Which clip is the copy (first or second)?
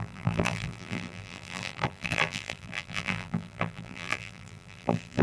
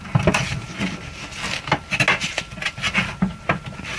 first